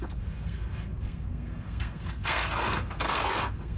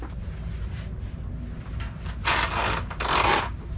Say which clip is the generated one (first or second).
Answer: first